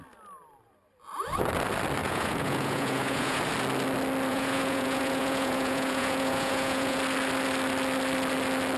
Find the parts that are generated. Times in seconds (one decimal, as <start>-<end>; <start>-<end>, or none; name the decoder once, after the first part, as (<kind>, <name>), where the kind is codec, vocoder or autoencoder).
2.0-3.4 (vocoder, Vocos); 4.3-7.0